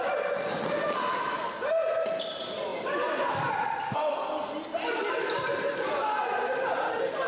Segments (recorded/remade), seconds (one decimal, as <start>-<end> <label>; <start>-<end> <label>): 0.0-7.3 recorded